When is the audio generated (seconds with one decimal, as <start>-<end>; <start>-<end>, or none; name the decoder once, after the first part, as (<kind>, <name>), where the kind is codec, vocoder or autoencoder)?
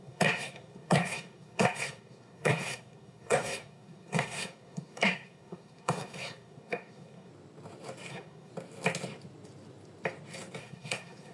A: 0.0-7.3 (codec, SNAC); 8.1-8.5; 10.6-11.3